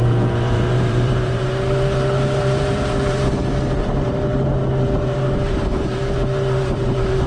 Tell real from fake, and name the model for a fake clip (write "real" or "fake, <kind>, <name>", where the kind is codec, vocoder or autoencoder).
fake, vocoder, BigVGAN v2